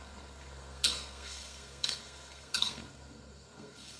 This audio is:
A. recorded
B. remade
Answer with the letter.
B